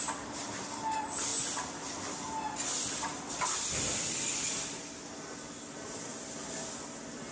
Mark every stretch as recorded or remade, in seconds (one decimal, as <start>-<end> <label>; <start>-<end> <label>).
0.0-7.3 recorded